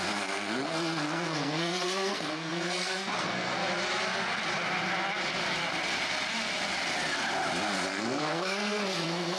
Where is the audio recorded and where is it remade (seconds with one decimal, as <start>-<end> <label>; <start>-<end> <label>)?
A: 0.0-3.6 remade; 3.6-7.9 recorded; 7.9-9.4 remade